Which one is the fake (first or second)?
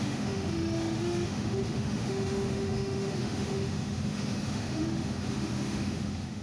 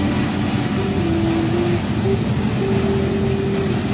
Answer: first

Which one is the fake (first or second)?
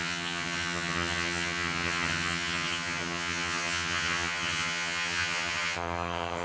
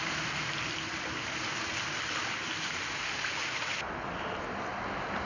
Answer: first